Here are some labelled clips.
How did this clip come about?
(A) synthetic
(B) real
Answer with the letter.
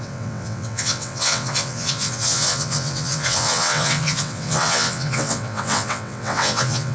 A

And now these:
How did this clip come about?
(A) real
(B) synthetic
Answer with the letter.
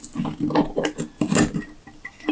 A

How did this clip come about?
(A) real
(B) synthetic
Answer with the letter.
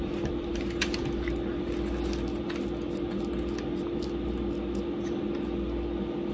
A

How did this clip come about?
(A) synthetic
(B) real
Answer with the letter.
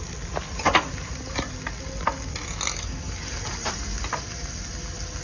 B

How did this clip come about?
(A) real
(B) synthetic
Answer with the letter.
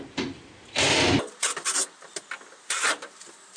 A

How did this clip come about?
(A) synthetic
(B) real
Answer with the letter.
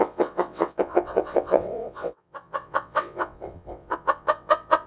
A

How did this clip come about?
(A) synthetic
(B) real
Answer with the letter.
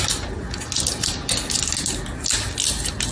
B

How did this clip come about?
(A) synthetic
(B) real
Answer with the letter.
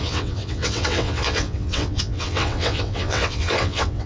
A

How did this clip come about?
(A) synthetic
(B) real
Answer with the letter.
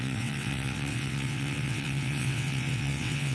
A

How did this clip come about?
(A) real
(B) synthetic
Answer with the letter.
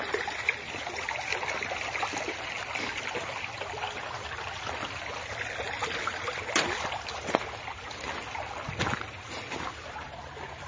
A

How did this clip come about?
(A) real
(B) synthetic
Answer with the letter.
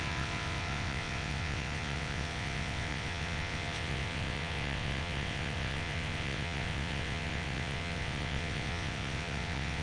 B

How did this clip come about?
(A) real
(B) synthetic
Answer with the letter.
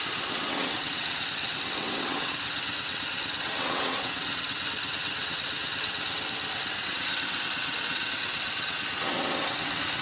B